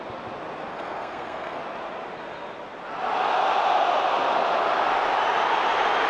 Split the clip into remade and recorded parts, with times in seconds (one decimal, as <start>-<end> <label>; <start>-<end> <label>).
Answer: 0.0-0.7 recorded; 0.7-1.6 remade; 1.6-6.1 recorded